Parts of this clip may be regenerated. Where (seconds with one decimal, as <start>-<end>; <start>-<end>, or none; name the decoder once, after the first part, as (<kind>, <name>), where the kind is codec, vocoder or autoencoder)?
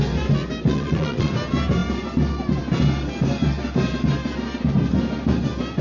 0.7-1.3 (vocoder, Vocos)